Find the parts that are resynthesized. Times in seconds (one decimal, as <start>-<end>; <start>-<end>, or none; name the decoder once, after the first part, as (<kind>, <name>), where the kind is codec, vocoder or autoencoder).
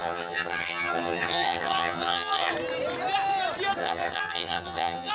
0.0-2.5 (vocoder, HiFi-GAN); 3.8-5.1